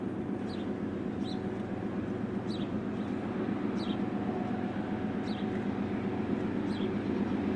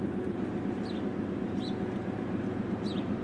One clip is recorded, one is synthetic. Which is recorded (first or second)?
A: first